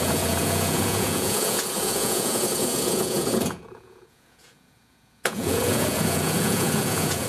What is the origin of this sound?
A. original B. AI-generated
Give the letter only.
B